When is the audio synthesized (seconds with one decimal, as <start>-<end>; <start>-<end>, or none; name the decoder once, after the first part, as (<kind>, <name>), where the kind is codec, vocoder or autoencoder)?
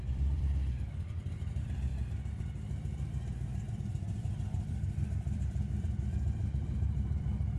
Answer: 0.0-1.9 (vocoder, BigVGAN v2); 3.7-7.6